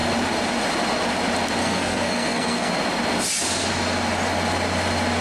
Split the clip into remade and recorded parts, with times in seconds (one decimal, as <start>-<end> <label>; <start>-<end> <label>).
0.0-1.6 recorded; 1.6-2.7 remade; 2.7-5.2 recorded